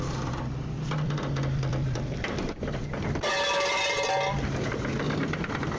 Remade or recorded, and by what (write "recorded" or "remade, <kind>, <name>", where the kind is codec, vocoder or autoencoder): remade, vocoder, BigVGAN v2